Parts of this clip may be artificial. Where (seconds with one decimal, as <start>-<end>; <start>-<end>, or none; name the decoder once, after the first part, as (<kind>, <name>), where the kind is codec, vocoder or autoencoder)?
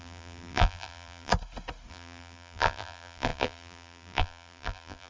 0.0-1.3 (vocoder, BigVGAN v2); 1.9-5.1